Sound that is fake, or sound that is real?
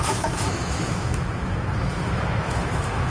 fake